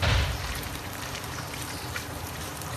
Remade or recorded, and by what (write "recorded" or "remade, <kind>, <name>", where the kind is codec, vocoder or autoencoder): remade, vocoder, BigVGAN v2